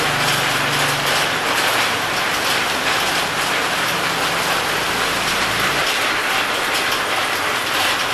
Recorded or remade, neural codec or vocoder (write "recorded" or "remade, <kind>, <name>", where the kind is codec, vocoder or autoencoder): recorded